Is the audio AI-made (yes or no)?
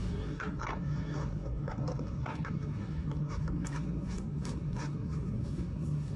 yes